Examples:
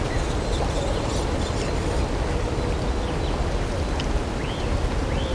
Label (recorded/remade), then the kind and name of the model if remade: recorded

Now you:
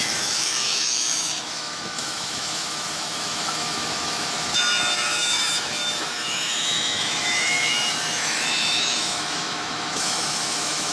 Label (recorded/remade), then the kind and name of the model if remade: remade, autoencoder, DAC-VAE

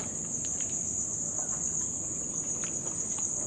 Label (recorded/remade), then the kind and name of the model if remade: recorded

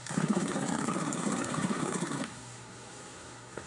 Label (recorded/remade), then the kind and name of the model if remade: remade, codec, SNAC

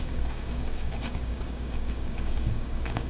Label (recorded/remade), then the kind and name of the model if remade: remade, codec, DAC